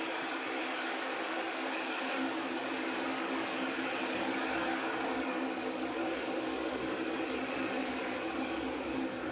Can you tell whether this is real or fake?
fake